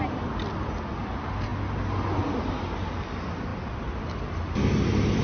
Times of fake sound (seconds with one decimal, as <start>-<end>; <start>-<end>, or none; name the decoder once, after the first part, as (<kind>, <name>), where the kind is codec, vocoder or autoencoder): none